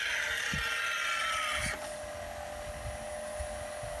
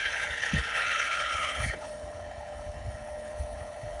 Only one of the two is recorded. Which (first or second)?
first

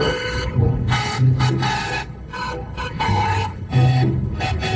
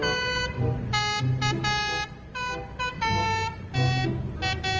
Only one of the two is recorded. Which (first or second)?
second